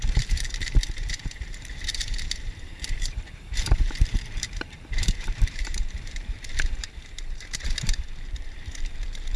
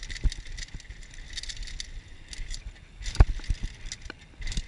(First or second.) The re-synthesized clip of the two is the first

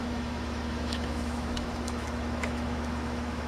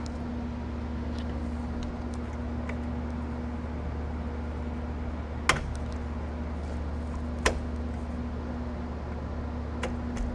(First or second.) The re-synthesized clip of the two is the first